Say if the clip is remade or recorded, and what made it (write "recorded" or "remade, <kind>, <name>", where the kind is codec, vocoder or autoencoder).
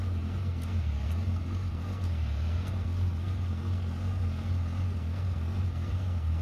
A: remade, codec, SNAC